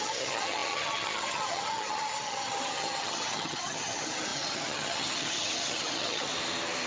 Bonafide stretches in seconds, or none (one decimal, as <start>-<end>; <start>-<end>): 6.3-6.9